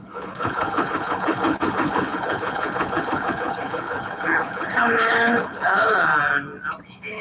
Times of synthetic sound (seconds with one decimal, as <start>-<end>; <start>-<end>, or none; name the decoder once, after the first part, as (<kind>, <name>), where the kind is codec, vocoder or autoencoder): 0.0-6.1 (codec, HILCodec); 6.8-7.2